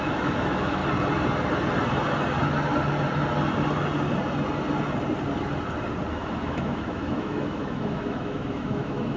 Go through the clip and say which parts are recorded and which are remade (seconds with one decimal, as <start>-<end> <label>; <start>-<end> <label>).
0.0-0.8 remade; 0.8-6.1 recorded; 6.1-9.2 remade